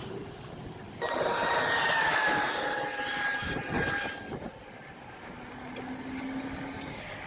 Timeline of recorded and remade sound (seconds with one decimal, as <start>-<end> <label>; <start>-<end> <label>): 0.0-1.4 recorded; 1.4-2.5 remade; 2.5-7.3 recorded